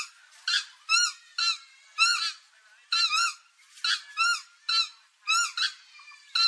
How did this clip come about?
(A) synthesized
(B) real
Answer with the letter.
B